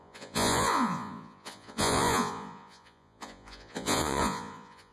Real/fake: fake